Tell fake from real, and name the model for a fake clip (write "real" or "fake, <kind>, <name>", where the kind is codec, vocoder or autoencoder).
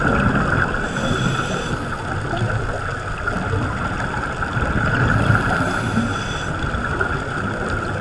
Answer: real